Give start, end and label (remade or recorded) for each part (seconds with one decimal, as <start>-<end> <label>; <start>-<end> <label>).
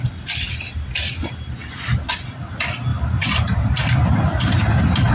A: 0.0-2.9 recorded; 2.9-5.1 remade